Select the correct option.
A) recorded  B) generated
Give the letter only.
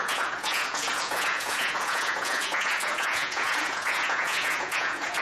B